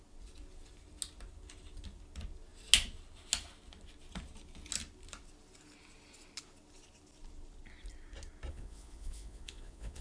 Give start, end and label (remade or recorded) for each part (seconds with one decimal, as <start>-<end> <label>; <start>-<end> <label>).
0.0-8.5 recorded; 8.5-10.0 remade